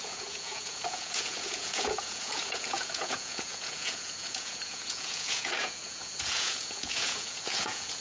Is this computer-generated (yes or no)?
yes